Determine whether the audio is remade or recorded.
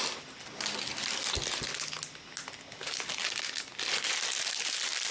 recorded